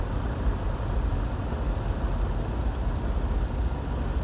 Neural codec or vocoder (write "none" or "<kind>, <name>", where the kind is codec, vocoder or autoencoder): none